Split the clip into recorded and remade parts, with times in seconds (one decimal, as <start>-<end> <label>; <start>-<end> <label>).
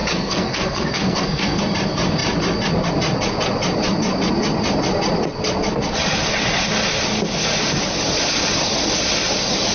0.0-1.6 remade; 1.6-9.7 recorded